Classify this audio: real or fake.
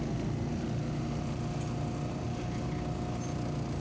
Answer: real